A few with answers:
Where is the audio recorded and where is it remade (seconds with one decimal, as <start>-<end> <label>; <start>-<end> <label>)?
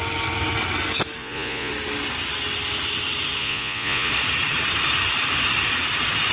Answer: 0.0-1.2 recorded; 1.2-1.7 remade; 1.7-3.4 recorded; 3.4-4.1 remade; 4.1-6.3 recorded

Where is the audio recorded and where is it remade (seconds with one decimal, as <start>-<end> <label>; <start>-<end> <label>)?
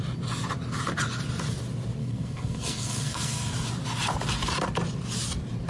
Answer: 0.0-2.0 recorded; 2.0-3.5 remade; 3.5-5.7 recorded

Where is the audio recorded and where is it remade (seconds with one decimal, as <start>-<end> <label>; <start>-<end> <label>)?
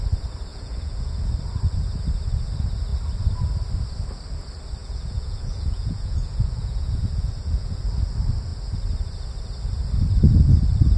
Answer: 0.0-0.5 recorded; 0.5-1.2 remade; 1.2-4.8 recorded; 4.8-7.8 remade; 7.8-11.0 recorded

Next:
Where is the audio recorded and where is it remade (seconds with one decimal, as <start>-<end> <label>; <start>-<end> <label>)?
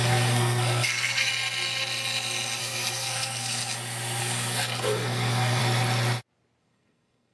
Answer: 0.0-1.3 remade; 1.3-2.6 recorded; 2.6-3.6 remade; 3.6-4.2 recorded; 4.2-5.6 remade; 5.6-6.6 recorded; 6.6-7.3 remade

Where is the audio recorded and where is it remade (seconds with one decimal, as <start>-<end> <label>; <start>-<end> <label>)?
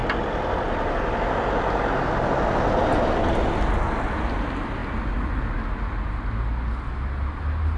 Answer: 0.0-7.8 recorded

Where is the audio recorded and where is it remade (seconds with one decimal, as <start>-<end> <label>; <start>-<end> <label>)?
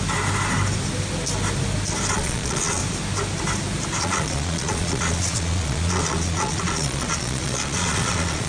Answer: 0.0-2.1 recorded; 2.1-2.8 remade; 2.8-4.0 recorded; 4.0-8.5 remade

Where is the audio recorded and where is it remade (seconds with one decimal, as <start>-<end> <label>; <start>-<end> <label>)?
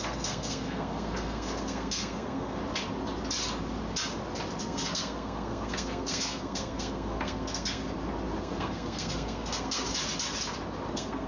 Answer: 0.0-2.6 remade; 2.6-4.6 recorded; 4.6-7.8 remade; 7.8-8.4 recorded; 8.4-9.9 remade; 9.9-10.9 recorded; 10.9-11.3 remade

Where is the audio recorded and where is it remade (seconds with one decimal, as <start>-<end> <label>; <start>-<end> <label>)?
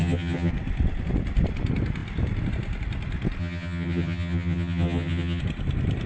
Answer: 0.0-0.5 remade; 0.5-3.4 recorded; 3.4-5.4 remade; 5.4-6.1 recorded